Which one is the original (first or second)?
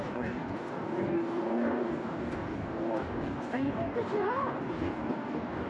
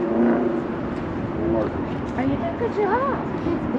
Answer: second